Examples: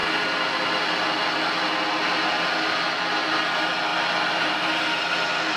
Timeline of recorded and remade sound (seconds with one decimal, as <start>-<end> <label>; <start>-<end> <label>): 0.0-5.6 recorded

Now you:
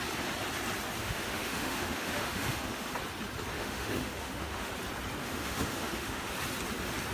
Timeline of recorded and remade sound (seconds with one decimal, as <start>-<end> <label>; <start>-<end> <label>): 0.0-1.0 recorded; 1.0-2.9 remade; 2.9-3.5 recorded; 3.5-4.7 remade; 4.7-5.2 recorded; 5.2-6.3 remade; 6.3-7.1 recorded

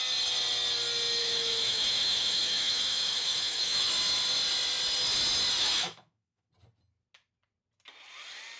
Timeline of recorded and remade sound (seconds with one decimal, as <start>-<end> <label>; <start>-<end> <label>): 0.0-1.2 recorded; 1.2-3.9 remade; 3.9-5.6 recorded; 5.6-6.5 remade; 6.5-8.6 recorded

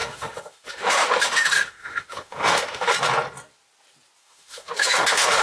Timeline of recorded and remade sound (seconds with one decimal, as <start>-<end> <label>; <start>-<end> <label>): 0.0-2.9 remade; 2.9-4.2 recorded; 4.2-5.4 remade

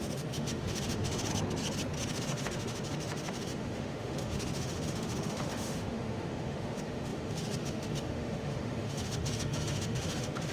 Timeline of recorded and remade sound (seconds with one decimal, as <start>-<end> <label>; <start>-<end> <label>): 0.0-1.3 remade; 1.3-2.0 recorded; 2.0-10.5 remade

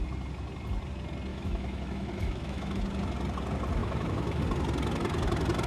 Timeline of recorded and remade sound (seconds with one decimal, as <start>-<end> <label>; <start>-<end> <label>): 0.0-1.3 recorded; 1.3-2.8 remade; 2.8-3.8 recorded; 3.8-4.4 remade; 4.4-5.7 recorded

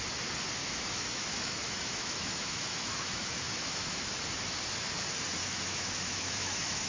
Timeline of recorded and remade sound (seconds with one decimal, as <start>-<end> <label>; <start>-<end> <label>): 0.0-0.6 recorded; 0.6-4.1 remade; 4.1-5.4 recorded; 5.4-6.9 remade

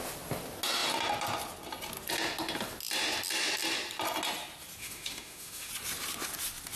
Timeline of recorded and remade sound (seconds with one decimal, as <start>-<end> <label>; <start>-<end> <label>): 0.0-4.8 recorded; 4.8-5.7 remade; 5.7-6.8 recorded